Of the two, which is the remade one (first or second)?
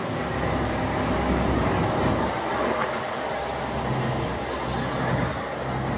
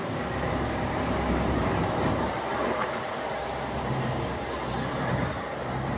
second